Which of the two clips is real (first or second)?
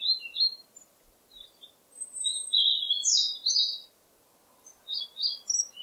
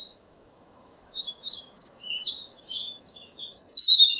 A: first